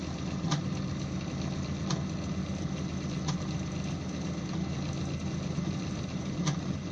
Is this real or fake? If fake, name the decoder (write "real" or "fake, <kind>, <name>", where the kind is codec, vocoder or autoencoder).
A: real